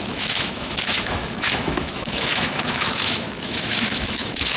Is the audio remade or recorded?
remade